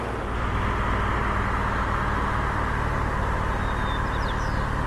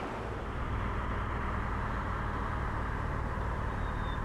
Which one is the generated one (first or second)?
second